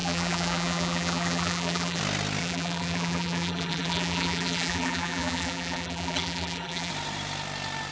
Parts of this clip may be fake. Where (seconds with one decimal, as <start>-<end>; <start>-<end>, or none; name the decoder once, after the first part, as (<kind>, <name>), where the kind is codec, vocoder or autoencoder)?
0.0-2.0 (vocoder, BigVGAN v2); 2.4-6.9